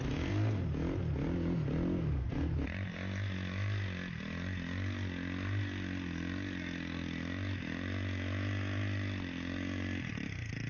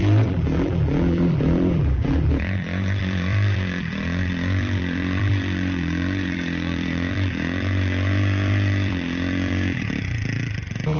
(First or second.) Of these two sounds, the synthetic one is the second